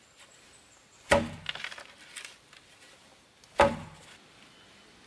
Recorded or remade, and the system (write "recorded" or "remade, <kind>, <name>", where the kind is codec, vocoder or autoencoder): recorded